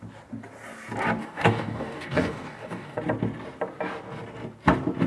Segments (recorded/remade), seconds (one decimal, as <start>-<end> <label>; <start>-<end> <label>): 0.0-1.2 recorded; 1.2-3.0 remade; 3.0-5.1 recorded